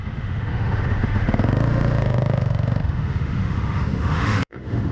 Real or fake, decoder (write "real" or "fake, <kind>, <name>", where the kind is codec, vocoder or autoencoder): fake, autoencoder, DAC-VAE